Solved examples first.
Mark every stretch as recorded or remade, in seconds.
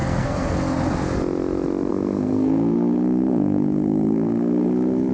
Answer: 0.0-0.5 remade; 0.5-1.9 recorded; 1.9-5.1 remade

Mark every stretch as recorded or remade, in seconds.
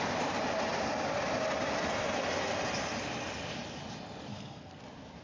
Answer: 0.0-4.3 recorded; 4.3-4.8 remade; 4.8-5.2 recorded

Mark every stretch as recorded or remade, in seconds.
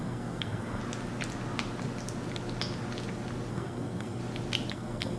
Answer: 0.0-0.8 remade; 0.8-3.5 recorded; 3.5-4.2 remade; 4.2-4.7 recorded; 4.7-5.2 remade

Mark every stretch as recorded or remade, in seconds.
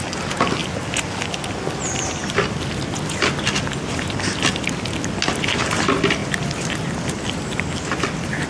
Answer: 0.0-8.5 recorded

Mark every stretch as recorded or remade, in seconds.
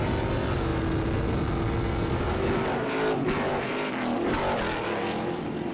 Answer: 0.0-5.7 recorded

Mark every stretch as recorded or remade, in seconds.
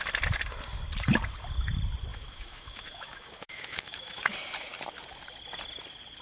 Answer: 0.0-2.1 recorded; 2.1-4.3 remade; 4.3-6.2 recorded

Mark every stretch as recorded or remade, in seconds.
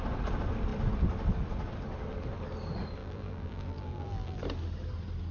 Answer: 0.0-3.0 recorded; 3.0-4.4 remade; 4.4-5.3 recorded